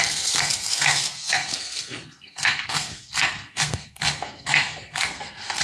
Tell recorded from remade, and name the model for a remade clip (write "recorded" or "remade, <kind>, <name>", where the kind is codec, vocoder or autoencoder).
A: remade, codec, SNAC